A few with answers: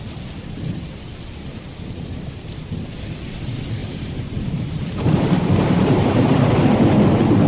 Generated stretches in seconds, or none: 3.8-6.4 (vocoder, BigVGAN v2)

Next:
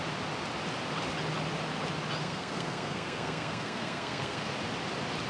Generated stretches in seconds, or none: 2.2-4.5 (codec, SNAC)

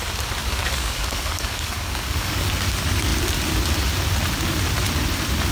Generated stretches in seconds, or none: 0.4-2.5 (codec, DAC)

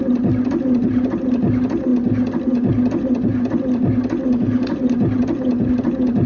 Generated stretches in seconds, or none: none

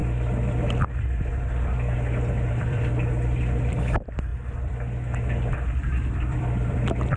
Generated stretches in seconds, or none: 2.5-4.3 (vocoder, BigVGAN v2); 5.5-7.2

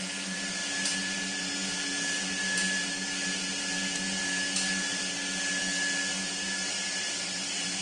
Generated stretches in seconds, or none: none

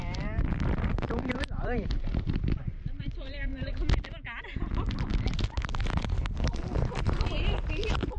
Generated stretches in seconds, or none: 0.0-3.5 (vocoder, BigVGAN v2); 4.4-8.2

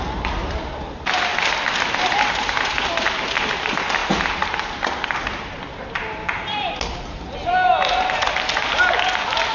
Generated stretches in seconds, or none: none